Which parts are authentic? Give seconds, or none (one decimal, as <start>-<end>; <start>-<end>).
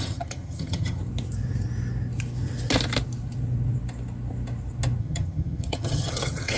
1.0-5.0